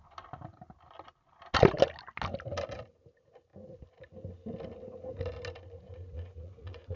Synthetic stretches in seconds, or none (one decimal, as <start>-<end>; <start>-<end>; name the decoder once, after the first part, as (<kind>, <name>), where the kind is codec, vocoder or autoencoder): 5.8-7.0 (vocoder, Vocos)